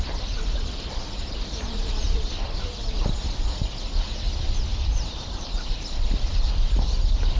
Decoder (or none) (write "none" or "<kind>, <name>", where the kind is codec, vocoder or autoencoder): vocoder, BigVGAN v2